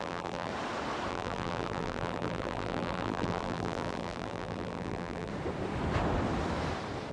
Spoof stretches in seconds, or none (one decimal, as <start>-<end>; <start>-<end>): 0.0-0.5; 1.1-5.3